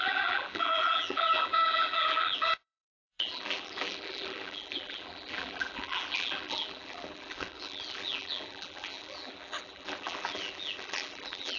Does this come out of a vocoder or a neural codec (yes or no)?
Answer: yes